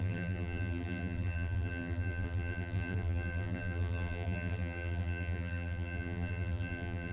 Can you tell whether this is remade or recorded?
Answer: remade